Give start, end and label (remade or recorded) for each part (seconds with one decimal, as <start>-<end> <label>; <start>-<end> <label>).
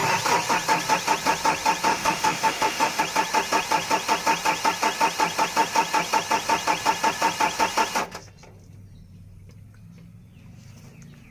0.0-1.9 recorded; 1.9-3.0 remade; 3.0-11.3 recorded